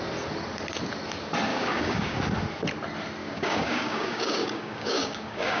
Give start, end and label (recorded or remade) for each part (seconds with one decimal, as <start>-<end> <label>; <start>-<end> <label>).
0.0-1.5 recorded; 1.5-2.2 remade; 2.2-3.2 recorded; 3.2-5.6 remade